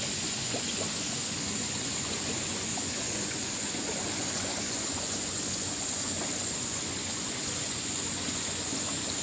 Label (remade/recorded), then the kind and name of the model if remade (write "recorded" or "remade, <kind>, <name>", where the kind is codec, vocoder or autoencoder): remade, vocoder, Vocos